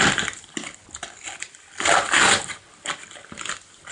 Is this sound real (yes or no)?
yes